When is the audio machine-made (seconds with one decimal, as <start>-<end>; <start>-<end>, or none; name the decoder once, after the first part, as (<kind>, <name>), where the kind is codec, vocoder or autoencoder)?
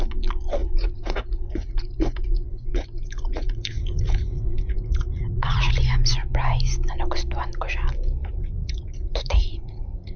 0.6-5.7 (vocoder, Vocos); 8.2-10.2